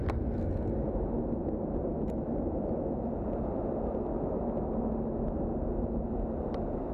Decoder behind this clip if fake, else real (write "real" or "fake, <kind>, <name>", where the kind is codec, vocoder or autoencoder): real